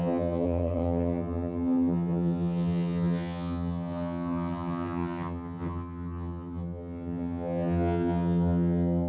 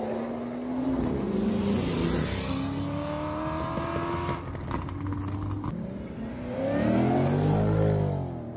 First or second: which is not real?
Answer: first